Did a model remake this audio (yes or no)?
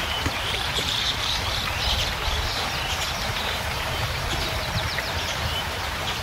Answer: yes